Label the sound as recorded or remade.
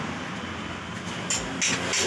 recorded